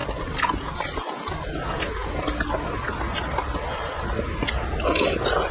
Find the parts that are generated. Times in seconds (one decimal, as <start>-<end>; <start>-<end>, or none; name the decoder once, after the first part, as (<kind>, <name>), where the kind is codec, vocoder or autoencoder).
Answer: none